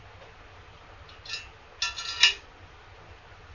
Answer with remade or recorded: recorded